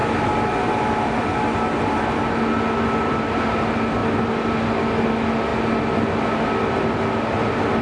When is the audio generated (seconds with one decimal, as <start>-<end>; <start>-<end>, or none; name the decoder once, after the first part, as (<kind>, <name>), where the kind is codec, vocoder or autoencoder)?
0.0-2.2 (vocoder, BigVGAN v2); 4.0-4.6